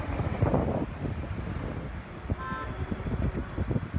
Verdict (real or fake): real